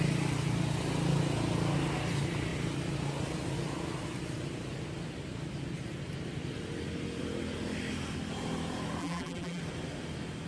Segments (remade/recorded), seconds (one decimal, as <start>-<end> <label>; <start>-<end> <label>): 0.0-9.0 recorded; 9.0-9.6 remade; 9.6-10.5 recorded